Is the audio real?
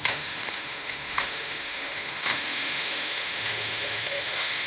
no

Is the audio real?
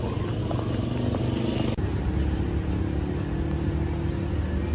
yes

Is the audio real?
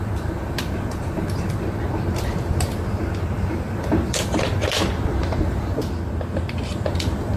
no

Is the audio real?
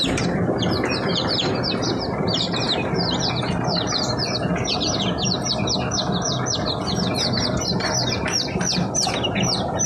yes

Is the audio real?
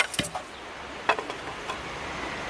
yes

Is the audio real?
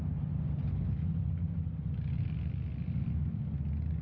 yes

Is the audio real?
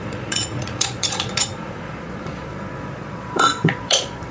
no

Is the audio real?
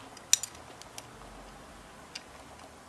yes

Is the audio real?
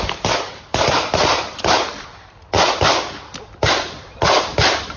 yes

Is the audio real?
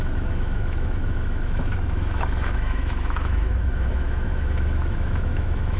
no